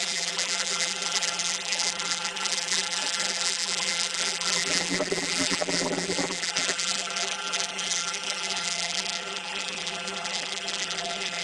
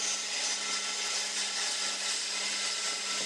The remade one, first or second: first